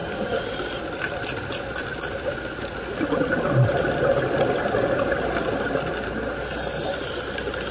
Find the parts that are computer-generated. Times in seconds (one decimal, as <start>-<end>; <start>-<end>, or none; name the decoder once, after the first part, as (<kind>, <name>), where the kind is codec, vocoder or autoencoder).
none